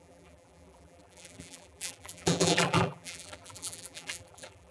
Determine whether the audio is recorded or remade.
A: remade